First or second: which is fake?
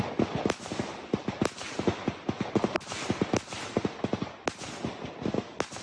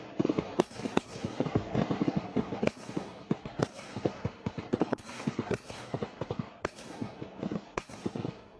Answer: second